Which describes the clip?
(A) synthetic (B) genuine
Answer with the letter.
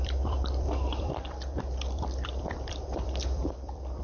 A